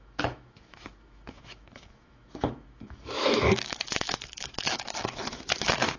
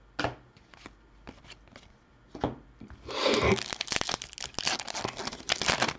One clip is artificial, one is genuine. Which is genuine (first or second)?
second